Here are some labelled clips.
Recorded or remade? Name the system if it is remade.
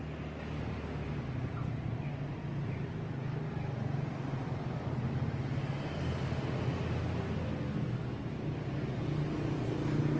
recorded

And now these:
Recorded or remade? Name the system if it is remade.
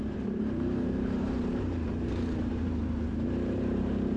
remade, vocoder, BigVGAN v2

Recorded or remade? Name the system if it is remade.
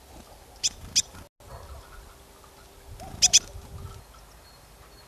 recorded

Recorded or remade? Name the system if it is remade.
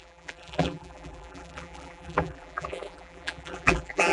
remade, vocoder, BigVGAN v2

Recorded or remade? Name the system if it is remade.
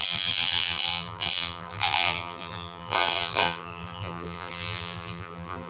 remade, vocoder, BigVGAN v2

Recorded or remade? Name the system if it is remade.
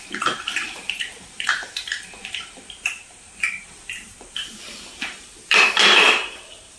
remade, vocoder, BigVGAN v2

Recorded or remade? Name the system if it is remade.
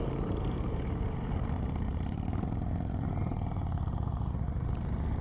remade, vocoder, BigVGAN v2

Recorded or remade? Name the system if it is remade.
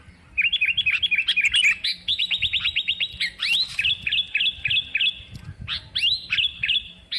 recorded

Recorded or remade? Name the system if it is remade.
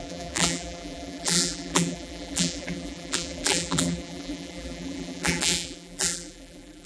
remade, vocoder, BigVGAN v2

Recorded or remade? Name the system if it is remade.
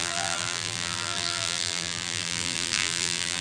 remade, vocoder, BigVGAN v2